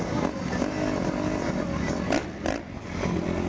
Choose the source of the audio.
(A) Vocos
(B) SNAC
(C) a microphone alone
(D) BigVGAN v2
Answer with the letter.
C